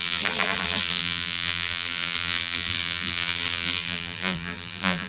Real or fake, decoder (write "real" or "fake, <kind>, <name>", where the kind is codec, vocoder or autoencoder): fake, vocoder, BigVGAN v2